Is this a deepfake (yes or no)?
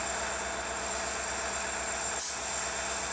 no